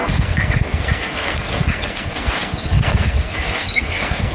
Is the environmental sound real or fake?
fake